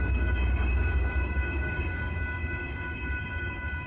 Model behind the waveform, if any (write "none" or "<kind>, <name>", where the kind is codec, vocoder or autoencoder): codec, DAC